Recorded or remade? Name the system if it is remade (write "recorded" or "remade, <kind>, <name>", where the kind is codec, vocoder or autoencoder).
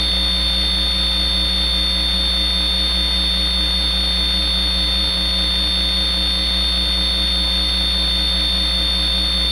recorded